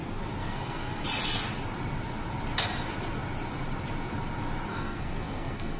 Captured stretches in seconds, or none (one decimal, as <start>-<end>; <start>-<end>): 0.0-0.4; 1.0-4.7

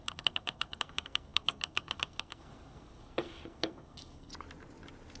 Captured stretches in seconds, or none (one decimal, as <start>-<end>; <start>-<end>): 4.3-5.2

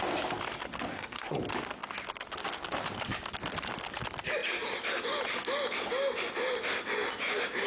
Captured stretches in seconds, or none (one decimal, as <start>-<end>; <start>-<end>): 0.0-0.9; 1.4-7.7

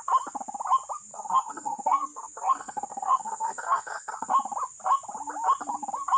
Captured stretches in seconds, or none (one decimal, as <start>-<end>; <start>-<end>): 0.0-1.1; 4.3-6.2

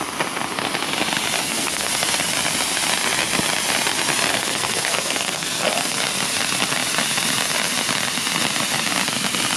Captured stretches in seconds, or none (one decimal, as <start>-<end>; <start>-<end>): 0.0-1.4; 1.9-4.3; 6.0-9.6

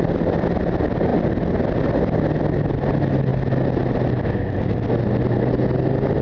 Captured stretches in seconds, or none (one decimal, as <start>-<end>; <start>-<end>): 0.0-6.2